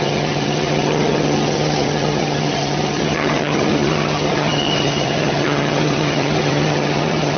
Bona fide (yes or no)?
no